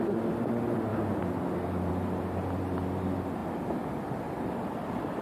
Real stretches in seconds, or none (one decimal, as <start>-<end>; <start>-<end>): 0.9-1.9